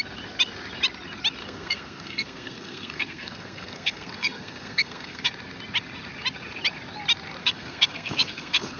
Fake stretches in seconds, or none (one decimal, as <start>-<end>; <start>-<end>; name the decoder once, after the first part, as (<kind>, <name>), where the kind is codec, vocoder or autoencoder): 1.4-5.3 (codec, SNAC); 7.4-8.8